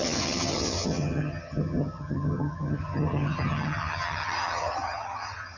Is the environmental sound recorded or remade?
remade